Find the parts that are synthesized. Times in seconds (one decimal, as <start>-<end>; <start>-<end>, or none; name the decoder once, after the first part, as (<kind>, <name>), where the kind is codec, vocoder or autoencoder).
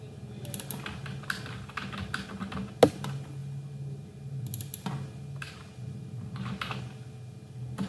none